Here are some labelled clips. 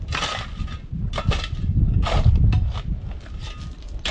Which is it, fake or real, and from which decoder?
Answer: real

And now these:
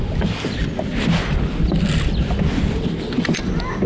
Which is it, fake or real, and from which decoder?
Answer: real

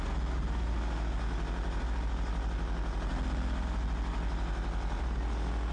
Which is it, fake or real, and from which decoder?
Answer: real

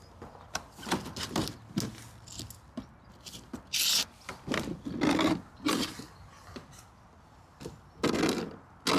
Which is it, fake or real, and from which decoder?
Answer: real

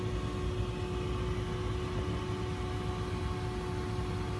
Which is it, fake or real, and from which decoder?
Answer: real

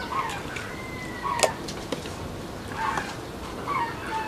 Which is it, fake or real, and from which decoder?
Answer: real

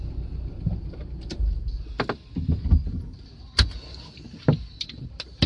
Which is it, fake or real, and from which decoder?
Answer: real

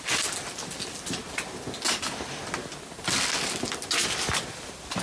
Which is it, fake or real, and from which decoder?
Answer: real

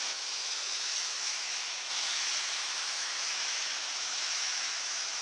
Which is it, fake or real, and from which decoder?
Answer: fake, autoencoder, DAC-VAE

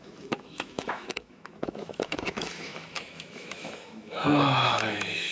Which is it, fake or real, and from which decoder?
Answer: fake, autoencoder, DAC-VAE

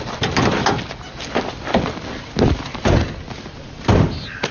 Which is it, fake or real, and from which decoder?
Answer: real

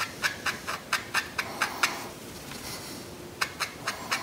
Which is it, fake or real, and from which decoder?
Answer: real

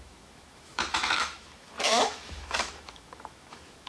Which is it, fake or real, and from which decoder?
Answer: fake, autoencoder, DAC-VAE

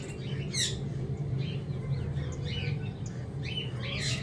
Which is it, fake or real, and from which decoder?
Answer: real